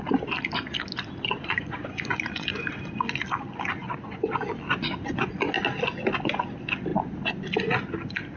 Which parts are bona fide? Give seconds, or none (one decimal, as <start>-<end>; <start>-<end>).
0.0-1.4; 2.8-3.8; 4.4-8.4

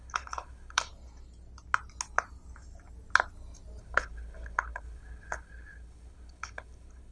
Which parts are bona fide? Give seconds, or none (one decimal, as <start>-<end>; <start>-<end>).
0.9-3.8